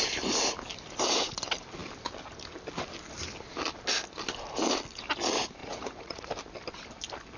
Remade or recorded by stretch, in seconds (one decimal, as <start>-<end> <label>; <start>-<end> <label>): 0.0-5.6 recorded; 5.6-6.3 remade; 6.3-7.4 recorded